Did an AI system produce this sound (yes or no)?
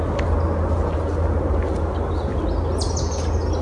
no